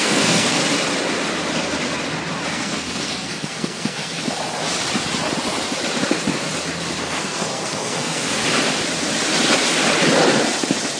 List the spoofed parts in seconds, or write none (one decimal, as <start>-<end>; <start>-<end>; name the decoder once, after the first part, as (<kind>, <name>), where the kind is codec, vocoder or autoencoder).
0.0-0.6 (codec, SNAC); 2.5-4.2; 7.0-8.4